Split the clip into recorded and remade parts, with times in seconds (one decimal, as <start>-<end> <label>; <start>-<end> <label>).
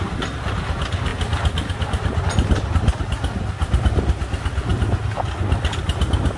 0.0-6.4 recorded